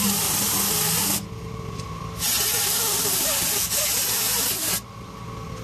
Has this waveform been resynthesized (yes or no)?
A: no